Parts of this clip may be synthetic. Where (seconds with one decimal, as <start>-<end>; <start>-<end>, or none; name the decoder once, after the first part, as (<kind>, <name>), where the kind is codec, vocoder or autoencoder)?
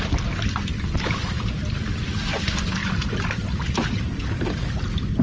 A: 0.7-1.8 (vocoder, BigVGAN v2); 2.8-4.4